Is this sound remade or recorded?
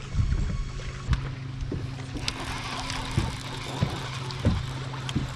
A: recorded